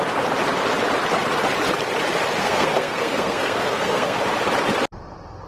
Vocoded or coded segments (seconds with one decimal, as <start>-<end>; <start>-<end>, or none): 2.4-4.2

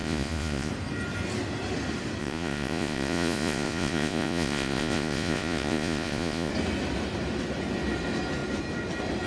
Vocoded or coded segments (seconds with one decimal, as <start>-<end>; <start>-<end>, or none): 0.0-0.7; 2.2-6.5

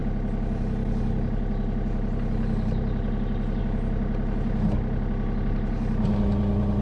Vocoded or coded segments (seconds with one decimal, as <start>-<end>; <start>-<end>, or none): none